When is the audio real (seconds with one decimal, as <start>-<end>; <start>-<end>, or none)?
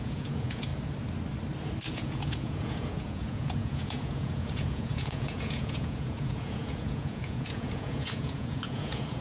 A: 0.7-1.9